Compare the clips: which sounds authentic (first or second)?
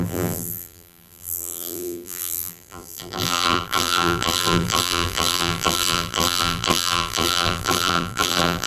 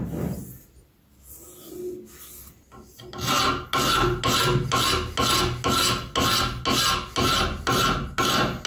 second